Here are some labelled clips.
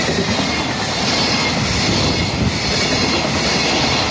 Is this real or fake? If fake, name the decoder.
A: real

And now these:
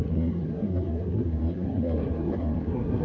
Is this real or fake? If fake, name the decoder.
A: fake, codec, SNAC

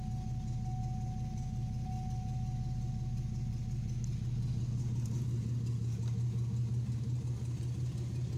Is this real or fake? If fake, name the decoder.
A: real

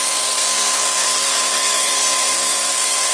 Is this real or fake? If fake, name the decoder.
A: fake, codec, SNAC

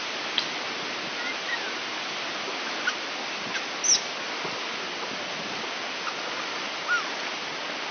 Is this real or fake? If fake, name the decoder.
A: real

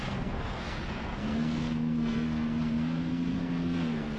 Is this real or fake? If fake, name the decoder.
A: fake, codec, SNAC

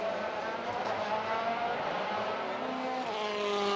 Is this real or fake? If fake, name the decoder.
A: real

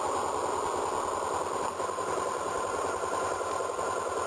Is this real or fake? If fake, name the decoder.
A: real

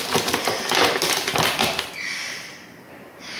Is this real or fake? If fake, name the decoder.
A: real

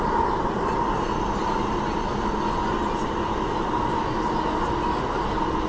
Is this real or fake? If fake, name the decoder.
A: real